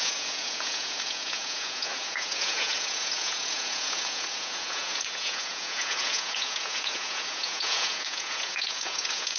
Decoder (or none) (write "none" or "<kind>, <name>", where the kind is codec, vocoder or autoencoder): vocoder, Vocos